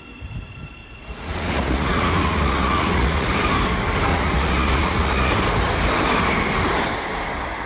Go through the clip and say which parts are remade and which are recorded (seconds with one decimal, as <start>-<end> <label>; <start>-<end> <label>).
0.0-0.8 recorded; 0.8-3.3 remade; 3.3-4.1 recorded; 4.1-5.3 remade; 5.3-7.7 recorded